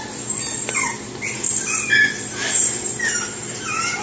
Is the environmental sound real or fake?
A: real